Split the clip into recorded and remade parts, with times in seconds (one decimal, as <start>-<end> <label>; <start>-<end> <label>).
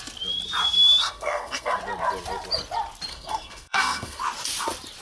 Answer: 0.0-1.0 recorded; 1.0-1.8 remade; 1.8-3.1 recorded; 3.1-4.2 remade; 4.2-5.0 recorded